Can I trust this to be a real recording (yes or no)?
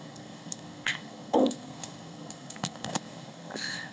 no